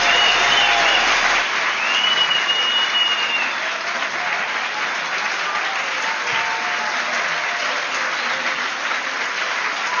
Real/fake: real